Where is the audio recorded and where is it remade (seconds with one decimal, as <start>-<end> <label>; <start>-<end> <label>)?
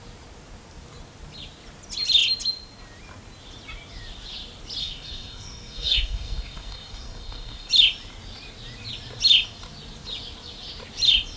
0.0-4.8 recorded; 4.8-7.7 remade; 7.7-11.4 recorded